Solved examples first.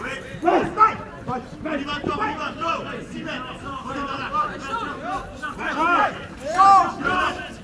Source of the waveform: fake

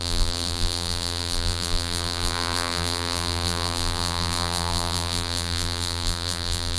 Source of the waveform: fake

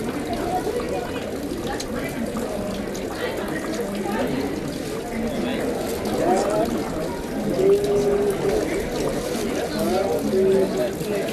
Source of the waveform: real